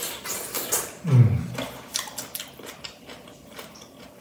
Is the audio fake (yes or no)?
no